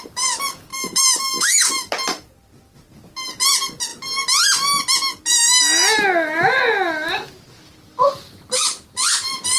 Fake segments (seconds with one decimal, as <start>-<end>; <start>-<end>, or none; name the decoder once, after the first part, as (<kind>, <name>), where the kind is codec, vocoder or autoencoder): 0.7-1.9 (autoencoder, DAC-VAE)

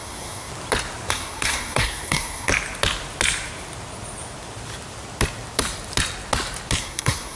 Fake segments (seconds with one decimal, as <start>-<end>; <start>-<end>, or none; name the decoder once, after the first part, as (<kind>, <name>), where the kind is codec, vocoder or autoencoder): 0.0-0.5 (codec, SNAC); 1.1-2.5; 6.8-7.4

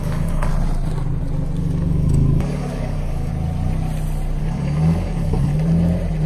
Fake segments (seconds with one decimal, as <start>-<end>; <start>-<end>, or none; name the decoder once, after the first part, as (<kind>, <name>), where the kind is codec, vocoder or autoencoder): 0.0-0.5 (codec, DAC); 1.6-3.3; 4.4-5.5

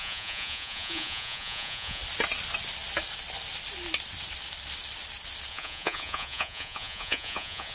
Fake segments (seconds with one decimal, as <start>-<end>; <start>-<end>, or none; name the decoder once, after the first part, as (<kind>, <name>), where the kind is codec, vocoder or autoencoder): 0.0-2.0 (vocoder, Vocos); 5.5-7.7

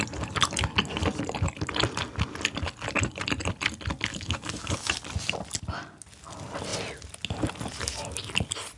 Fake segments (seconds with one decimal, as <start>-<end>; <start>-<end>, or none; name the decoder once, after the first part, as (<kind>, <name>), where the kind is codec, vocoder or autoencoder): 4.1-4.9 (codec, DAC)

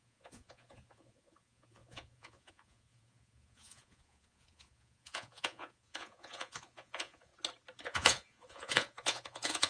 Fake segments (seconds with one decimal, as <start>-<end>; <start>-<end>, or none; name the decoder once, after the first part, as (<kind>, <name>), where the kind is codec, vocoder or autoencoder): 0.0-7.3 (vocoder, Vocos); 7.8-9.7

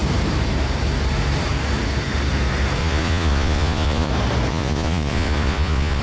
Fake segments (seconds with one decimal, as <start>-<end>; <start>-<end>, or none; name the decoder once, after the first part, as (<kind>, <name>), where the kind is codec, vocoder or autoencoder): 2.8-4.1 (vocoder, Vocos); 4.5-6.0